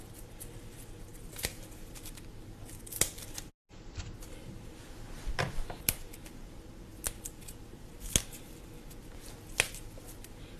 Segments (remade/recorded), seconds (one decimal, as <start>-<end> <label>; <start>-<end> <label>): 0.0-10.6 recorded